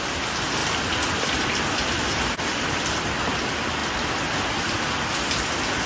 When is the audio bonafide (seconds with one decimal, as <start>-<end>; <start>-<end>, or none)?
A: 0.0-0.6; 1.6-2.1; 2.8-5.9